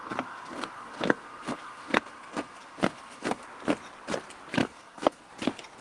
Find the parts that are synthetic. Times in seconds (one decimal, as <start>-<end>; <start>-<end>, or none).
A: 0.0-3.4; 4.6-5.3